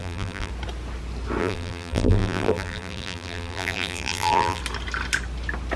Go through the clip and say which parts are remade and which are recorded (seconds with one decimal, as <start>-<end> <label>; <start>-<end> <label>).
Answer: 0.0-0.5 remade; 0.5-1.4 recorded; 1.4-4.6 remade; 4.6-5.8 recorded